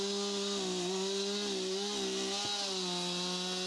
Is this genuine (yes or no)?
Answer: yes